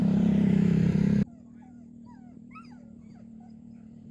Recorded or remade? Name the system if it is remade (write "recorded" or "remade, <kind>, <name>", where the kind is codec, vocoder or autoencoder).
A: remade, vocoder, BigVGAN v2